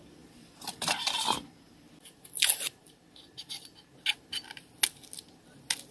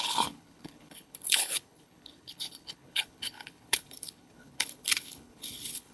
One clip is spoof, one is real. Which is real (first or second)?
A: first